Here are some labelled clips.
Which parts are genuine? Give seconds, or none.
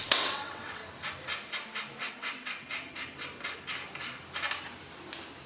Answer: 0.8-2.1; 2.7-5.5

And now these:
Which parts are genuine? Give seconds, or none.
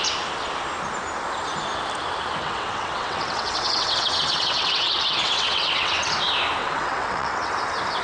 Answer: 0.0-2.4; 6.1-6.6; 7.5-8.0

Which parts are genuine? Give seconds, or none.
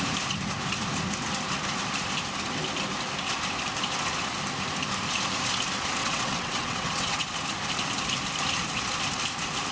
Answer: 0.0-6.0; 7.3-9.7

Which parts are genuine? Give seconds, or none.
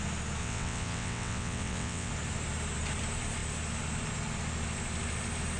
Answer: 0.0-0.4; 2.1-5.6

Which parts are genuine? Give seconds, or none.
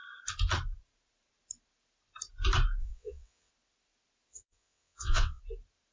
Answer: 0.0-2.8; 3.5-4.3; 5.4-5.9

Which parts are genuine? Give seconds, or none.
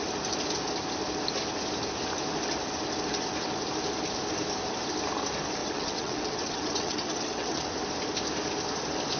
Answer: 0.0-5.6; 7.6-9.2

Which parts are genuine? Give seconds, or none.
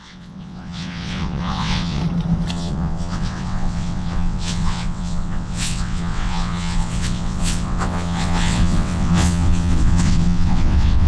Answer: 2.0-2.5